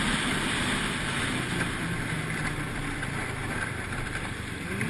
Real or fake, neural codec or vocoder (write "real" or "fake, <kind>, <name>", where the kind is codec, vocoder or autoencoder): fake, vocoder, BigVGAN v2